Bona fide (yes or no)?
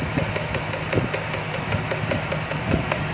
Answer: yes